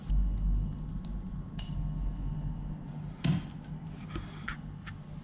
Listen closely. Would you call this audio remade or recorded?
recorded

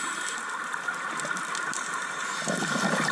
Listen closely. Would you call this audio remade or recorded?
recorded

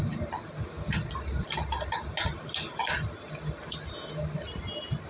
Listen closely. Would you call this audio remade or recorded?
recorded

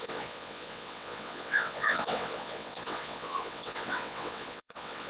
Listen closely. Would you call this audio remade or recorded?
remade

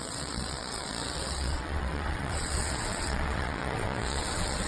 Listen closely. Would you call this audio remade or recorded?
remade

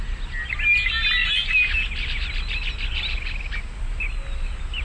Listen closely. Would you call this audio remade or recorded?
recorded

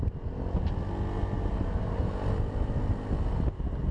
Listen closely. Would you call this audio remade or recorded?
recorded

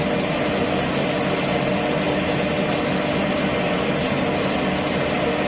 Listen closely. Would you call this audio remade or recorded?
recorded